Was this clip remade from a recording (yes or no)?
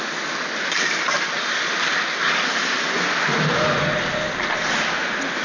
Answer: no